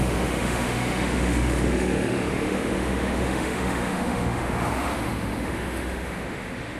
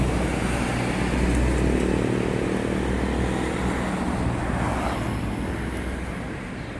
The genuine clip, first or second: second